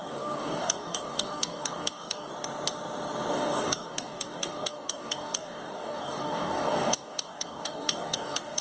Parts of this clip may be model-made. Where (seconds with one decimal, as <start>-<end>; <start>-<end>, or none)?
0.0-2.3; 3.3-8.6